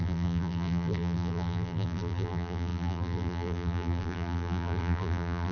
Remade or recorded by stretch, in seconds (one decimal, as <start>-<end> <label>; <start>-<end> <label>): 0.0-5.5 remade